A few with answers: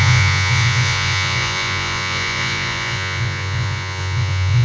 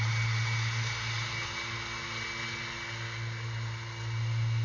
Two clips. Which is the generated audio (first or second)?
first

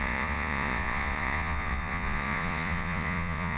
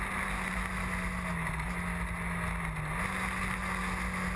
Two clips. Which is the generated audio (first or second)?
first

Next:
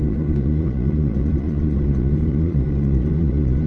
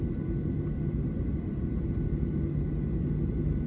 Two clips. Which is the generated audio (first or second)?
first